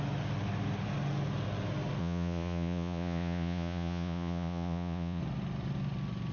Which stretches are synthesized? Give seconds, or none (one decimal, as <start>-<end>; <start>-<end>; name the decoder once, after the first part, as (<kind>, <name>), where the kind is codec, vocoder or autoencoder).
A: 2.0-5.2 (vocoder, Vocos)